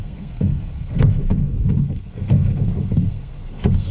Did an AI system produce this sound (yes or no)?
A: yes